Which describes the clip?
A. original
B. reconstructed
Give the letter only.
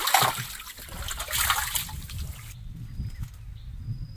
A